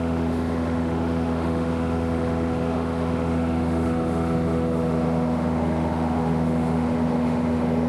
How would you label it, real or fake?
fake